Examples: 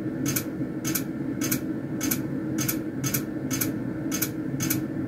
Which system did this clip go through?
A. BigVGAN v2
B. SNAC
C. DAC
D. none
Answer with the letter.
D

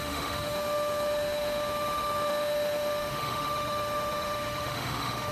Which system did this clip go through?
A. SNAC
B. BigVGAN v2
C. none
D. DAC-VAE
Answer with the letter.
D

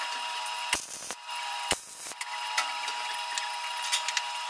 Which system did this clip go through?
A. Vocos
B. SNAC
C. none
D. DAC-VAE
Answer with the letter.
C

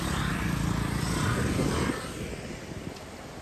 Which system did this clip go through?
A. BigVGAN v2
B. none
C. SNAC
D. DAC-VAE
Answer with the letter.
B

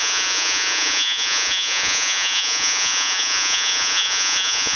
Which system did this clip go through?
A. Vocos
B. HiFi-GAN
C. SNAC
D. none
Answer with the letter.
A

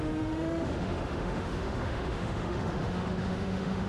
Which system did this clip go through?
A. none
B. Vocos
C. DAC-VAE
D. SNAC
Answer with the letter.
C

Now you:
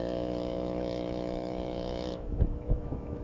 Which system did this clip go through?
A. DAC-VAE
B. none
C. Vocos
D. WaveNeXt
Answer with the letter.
A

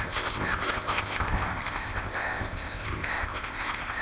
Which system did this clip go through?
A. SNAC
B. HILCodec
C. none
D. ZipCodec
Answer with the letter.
D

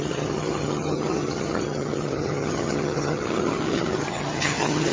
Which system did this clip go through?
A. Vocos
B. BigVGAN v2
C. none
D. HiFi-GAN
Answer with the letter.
D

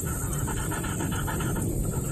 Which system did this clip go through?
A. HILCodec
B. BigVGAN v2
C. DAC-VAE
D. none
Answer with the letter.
B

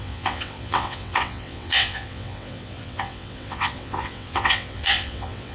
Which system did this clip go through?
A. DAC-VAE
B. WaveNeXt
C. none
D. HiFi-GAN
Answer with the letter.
B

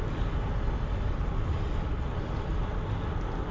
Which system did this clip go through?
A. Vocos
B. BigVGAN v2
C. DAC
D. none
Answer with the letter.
D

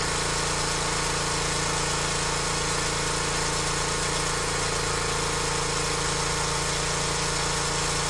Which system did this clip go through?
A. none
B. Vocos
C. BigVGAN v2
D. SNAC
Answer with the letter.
A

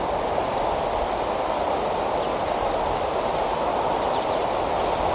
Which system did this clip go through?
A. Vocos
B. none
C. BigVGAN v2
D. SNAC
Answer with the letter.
B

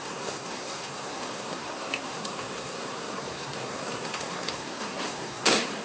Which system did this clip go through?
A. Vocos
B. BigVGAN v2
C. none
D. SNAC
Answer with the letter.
D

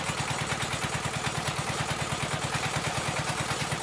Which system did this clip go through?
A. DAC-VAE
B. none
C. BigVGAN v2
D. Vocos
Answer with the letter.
B